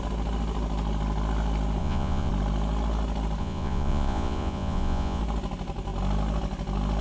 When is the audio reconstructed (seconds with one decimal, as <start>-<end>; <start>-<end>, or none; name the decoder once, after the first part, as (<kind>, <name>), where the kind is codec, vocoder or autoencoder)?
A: 1.8-2.3 (vocoder, Vocos); 3.4-5.2